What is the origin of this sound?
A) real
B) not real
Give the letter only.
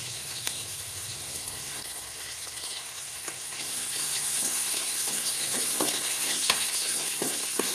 B